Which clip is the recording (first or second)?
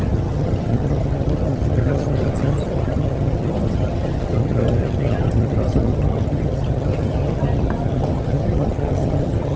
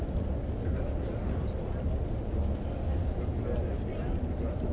second